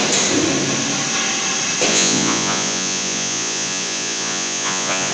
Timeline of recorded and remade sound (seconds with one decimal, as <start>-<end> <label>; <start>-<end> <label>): 0.0-1.9 recorded; 1.9-5.1 remade

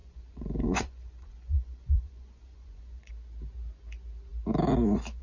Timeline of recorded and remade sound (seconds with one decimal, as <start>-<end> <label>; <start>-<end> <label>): 0.0-3.1 remade; 3.1-5.2 recorded

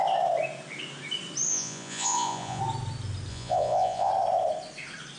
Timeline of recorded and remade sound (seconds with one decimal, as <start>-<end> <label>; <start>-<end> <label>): 0.0-1.5 recorded; 1.5-2.6 remade; 2.6-3.3 recorded; 3.3-4.1 remade; 4.1-5.2 recorded